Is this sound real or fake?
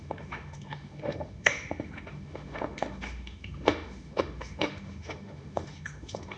fake